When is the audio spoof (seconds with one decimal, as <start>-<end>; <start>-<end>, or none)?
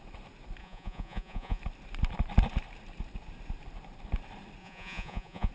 0.6-1.6; 4.6-5.5